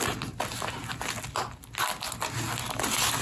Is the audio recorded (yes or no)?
yes